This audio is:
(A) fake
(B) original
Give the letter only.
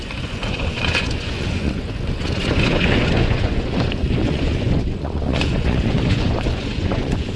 A